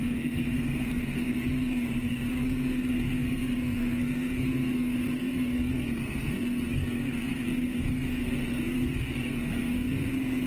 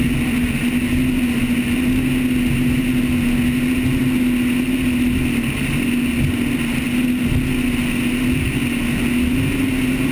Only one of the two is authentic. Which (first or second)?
second